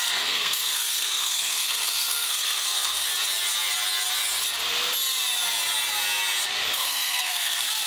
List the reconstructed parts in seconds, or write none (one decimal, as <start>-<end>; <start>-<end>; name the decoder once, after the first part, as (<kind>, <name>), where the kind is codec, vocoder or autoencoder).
0.0-3.1 (codec, SNAC); 6.7-7.9